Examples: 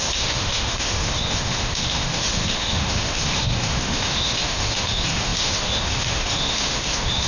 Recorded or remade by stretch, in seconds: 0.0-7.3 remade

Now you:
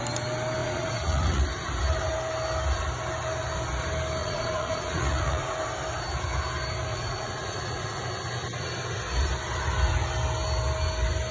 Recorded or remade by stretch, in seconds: 0.0-0.6 recorded; 0.6-1.4 remade; 1.4-4.2 recorded; 4.2-5.6 remade; 5.6-6.9 recorded; 6.9-8.0 remade; 8.0-11.3 recorded

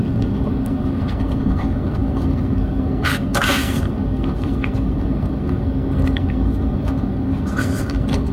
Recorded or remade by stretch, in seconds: 0.0-8.3 remade